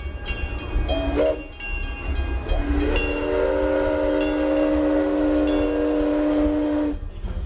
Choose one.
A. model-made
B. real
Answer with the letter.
B